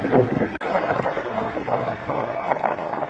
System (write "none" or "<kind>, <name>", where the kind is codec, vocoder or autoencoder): codec, SNAC